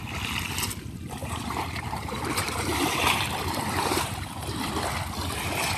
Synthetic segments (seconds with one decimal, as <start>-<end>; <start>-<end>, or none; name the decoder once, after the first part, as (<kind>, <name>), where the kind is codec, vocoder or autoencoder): 1.2-4.7 (vocoder, BigVGAN v2)